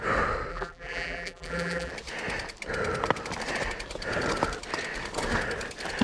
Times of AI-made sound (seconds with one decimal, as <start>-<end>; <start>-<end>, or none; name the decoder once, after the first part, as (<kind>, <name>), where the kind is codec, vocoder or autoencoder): 0.5-1.9 (vocoder, BigVGAN v2)